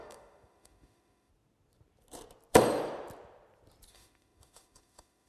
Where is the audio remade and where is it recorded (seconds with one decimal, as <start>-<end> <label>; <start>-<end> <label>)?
0.0-1.3 remade; 1.3-3.9 recorded; 3.9-5.3 remade